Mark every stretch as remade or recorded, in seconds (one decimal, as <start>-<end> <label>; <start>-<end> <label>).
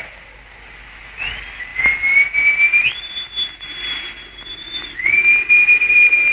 0.0-6.3 recorded